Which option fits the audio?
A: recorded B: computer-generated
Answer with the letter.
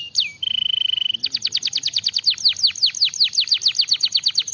A